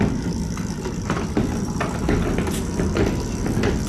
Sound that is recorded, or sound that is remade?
recorded